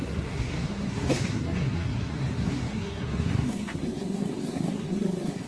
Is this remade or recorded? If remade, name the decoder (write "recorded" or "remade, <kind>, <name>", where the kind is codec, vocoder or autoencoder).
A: remade, codec, SNAC